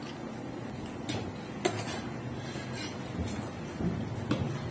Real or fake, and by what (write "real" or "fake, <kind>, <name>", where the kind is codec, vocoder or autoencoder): real